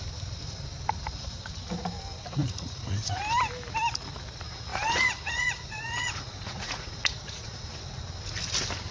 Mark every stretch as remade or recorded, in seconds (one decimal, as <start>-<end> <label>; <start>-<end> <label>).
0.0-2.4 recorded; 2.4-3.2 remade; 3.2-4.7 recorded; 4.7-7.6 remade; 7.6-8.9 recorded